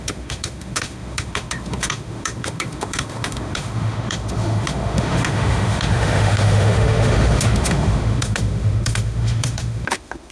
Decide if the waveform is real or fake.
fake